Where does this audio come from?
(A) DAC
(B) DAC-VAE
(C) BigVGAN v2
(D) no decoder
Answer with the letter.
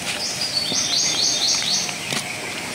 C